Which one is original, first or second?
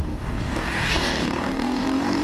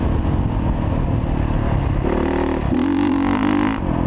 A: second